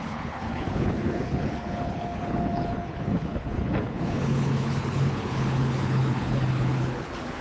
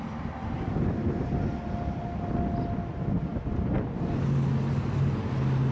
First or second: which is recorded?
second